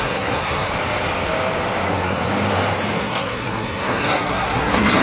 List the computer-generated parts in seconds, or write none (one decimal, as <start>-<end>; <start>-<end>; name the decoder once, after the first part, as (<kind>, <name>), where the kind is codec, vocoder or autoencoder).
0.0-0.7 (codec, SNAC); 1.9-2.3; 3.0-5.0